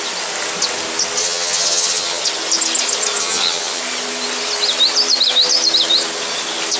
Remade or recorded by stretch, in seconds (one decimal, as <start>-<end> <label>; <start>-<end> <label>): 0.0-1.2 recorded; 1.2-2.2 remade; 2.2-3.2 recorded; 3.2-3.8 remade; 3.8-6.8 recorded